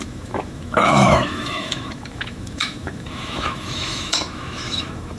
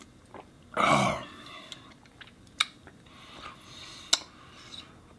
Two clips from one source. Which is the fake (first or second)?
first